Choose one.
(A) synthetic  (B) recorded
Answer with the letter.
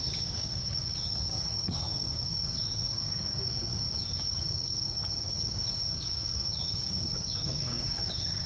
A